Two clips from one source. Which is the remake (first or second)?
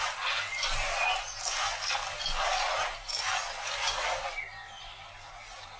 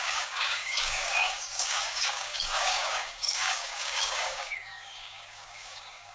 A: second